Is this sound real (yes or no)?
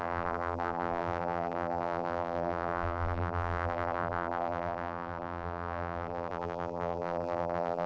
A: no